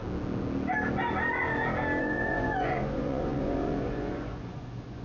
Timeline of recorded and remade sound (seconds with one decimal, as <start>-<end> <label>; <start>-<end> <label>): 0.0-2.0 recorded; 2.0-5.0 remade